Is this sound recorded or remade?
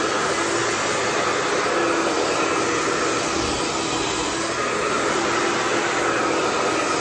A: recorded